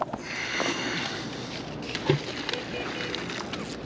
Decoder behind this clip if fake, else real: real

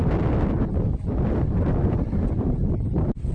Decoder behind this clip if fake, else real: real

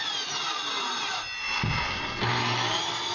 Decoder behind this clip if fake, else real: real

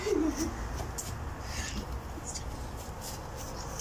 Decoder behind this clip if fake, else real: real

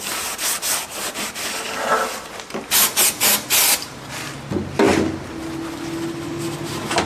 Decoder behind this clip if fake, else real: real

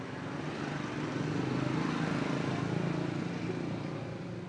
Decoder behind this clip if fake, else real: real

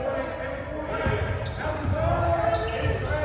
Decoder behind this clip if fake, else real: real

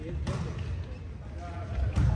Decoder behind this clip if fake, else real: real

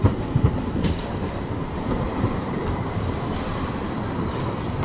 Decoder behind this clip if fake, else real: fake, vocoder, BigVGAN v2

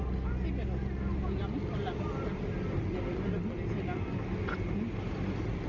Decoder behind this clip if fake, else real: real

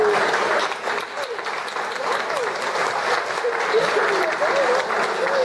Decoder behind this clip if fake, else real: real